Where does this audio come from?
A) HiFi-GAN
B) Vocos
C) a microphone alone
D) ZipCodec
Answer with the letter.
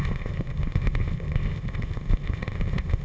D